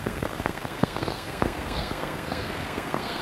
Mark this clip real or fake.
fake